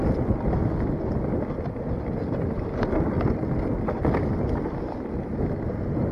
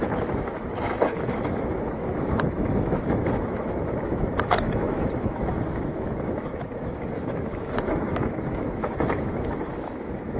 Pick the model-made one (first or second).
second